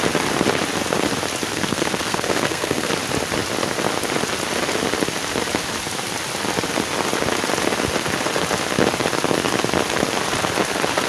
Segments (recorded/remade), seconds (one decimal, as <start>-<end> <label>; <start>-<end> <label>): 0.0-1.5 recorded; 1.5-2.9 remade; 2.9-11.1 recorded

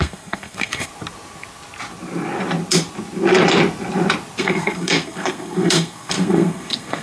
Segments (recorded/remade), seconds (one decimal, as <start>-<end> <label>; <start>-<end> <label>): 0.0-0.9 remade; 0.9-4.4 recorded; 4.4-7.0 remade

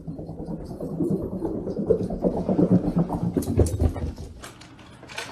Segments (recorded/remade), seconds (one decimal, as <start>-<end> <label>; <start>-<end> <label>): 0.0-5.3 recorded

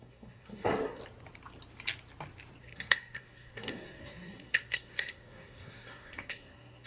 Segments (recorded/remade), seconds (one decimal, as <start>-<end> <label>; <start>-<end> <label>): 0.0-1.0 remade; 1.0-2.6 recorded; 2.6-6.9 remade

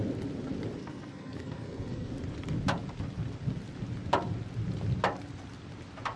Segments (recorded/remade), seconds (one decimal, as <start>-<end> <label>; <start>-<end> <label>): 0.0-0.8 recorded; 0.8-2.1 remade; 2.1-6.2 recorded

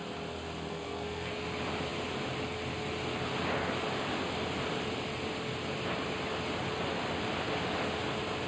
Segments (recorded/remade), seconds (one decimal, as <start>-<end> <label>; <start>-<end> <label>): 0.0-0.7 recorded; 0.7-1.4 remade; 1.4-8.5 recorded

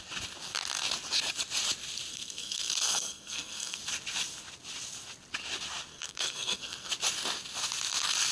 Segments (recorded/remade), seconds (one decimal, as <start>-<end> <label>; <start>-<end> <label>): 0.0-2.1 recorded; 2.1-3.8 remade; 3.8-5.9 recorded; 5.9-6.9 remade; 6.9-8.3 recorded